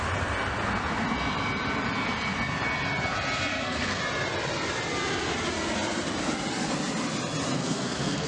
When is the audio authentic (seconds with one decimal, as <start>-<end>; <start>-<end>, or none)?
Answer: 0.0-3.5; 4.0-7.6